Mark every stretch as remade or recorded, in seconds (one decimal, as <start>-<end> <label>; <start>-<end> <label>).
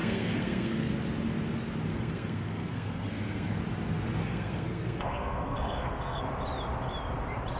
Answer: 0.0-0.9 remade; 0.9-1.9 recorded; 1.9-3.6 remade; 3.6-4.2 recorded; 4.2-6.2 remade; 6.2-7.6 recorded